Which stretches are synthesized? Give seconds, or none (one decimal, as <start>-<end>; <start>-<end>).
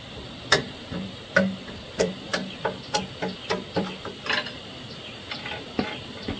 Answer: 0.0-6.4